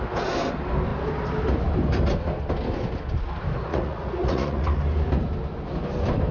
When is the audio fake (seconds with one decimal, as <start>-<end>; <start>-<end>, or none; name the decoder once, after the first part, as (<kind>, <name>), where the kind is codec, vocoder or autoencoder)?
3.7-4.8 (vocoder, Vocos)